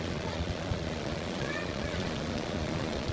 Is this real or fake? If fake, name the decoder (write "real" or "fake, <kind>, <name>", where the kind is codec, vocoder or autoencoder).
fake, vocoder, Vocos